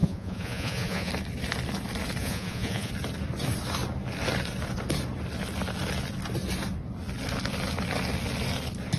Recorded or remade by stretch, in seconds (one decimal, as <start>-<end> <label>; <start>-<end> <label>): 0.0-1.1 remade; 1.1-2.2 recorded; 2.2-2.9 remade; 2.9-9.0 recorded